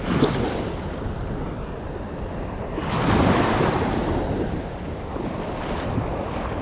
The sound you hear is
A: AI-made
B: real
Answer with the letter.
B